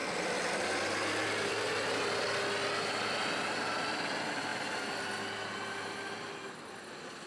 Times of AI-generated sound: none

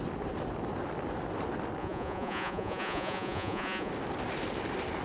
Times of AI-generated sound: 1.8-3.9 (vocoder, Vocos)

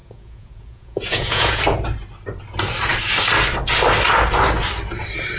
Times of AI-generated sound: 0.0-1.6 (vocoder, Vocos)

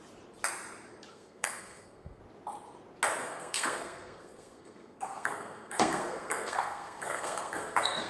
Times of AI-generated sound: 1.1-2.2 (codec, SNAC); 3.2-8.1

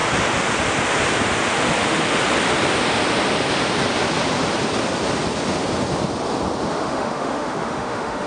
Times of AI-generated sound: 1.8-2.2 (autoencoder, DAC-VAE); 6.7-8.3

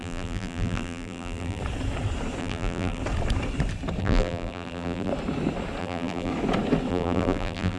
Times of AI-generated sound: 0.0-1.6 (vocoder, BigVGAN v2); 2.4-3.0; 4.0-5.1; 5.8-6.3; 6.9-7.8

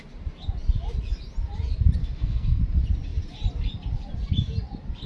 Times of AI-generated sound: 2.0-2.6 (codec, SNAC)